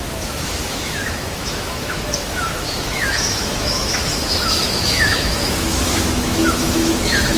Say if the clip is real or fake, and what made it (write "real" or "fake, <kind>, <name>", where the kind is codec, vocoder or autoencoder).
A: fake, autoencoder, DAC-VAE